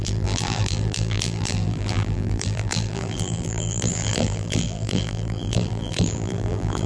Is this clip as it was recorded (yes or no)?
no